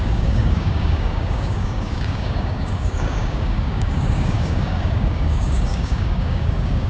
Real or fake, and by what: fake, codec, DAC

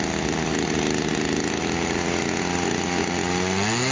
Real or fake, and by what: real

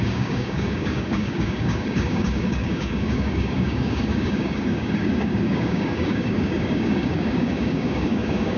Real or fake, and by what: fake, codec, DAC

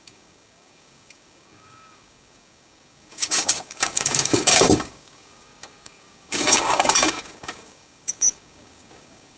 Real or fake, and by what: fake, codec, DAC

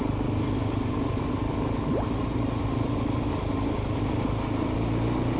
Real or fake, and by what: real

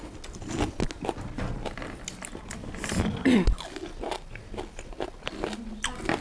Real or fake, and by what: real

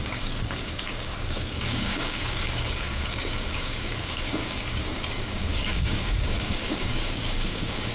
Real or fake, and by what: fake, codec, DAC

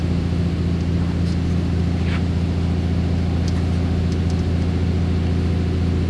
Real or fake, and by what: real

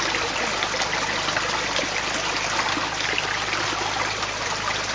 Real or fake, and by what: real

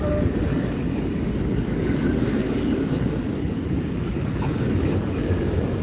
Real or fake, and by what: fake, codec, DAC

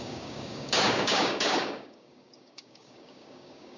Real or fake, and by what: fake, codec, DAC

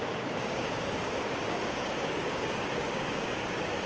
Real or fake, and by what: fake, codec, DAC